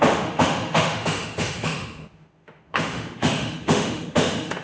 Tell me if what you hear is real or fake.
fake